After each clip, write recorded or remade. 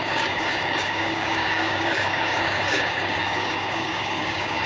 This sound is remade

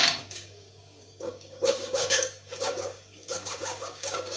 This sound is remade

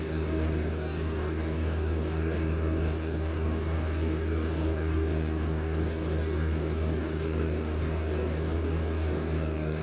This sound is remade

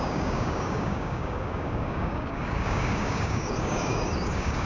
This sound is remade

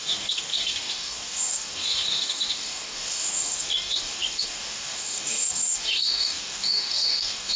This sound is remade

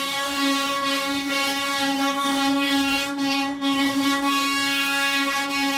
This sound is remade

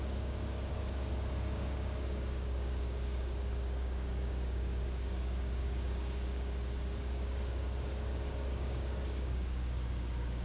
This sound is remade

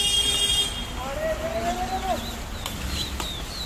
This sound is recorded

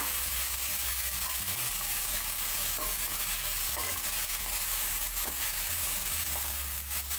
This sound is remade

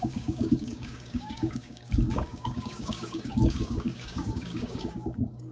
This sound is remade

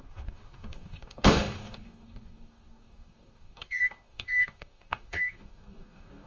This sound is remade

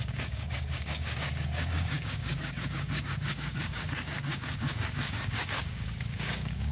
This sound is remade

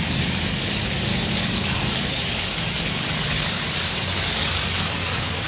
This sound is remade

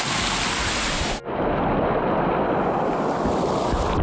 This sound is recorded